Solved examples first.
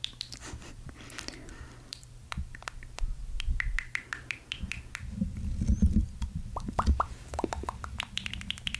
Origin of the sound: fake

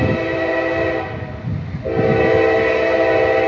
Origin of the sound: real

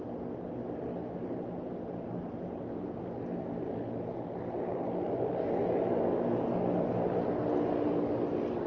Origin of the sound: real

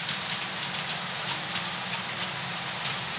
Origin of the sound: fake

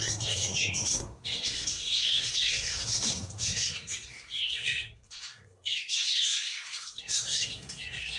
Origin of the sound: fake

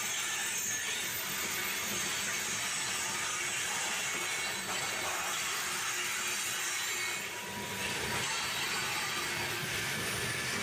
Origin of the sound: real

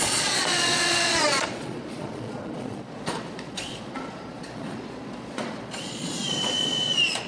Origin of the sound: fake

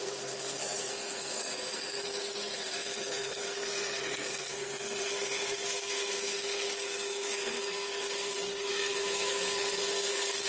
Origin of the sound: fake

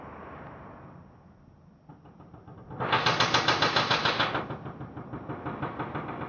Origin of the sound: real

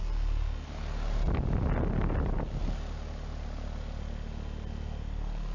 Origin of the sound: real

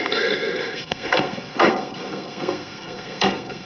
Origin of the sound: fake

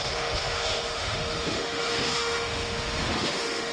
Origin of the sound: fake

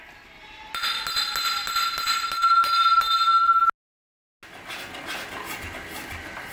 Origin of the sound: real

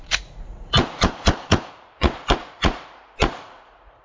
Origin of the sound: fake